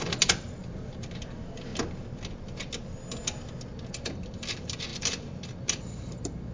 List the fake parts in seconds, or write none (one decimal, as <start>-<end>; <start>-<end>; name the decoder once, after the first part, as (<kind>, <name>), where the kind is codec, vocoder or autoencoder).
none